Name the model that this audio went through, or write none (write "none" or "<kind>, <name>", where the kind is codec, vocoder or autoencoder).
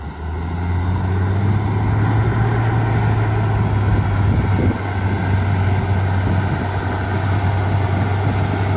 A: none